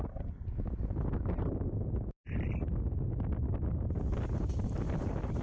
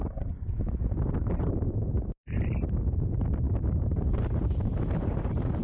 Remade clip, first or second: second